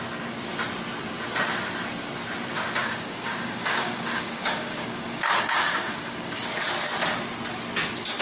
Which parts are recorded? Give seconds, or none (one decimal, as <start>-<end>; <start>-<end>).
0.0-2.8; 6.4-8.2